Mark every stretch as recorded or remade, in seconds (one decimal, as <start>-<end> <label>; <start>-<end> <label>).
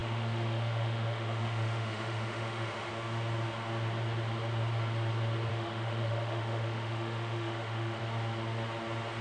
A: 0.0-2.9 remade; 2.9-5.5 recorded; 5.5-8.0 remade; 8.0-9.2 recorded